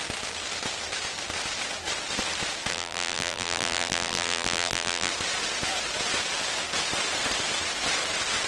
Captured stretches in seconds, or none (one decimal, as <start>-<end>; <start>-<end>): 0.0-2.7; 5.1-8.5